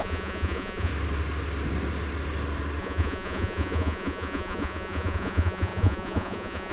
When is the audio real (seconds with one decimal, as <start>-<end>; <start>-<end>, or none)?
0.9-2.8